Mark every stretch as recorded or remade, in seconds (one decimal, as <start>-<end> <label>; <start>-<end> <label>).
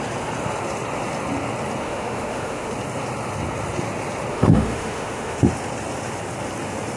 0.0-1.8 recorded; 1.8-2.7 remade; 2.7-4.3 recorded; 4.3-5.5 remade; 5.5-7.0 recorded